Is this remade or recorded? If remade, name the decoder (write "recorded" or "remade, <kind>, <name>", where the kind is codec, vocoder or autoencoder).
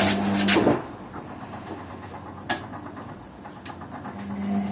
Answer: recorded